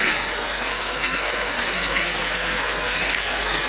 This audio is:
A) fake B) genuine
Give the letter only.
A